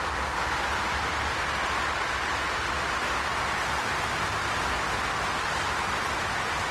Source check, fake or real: real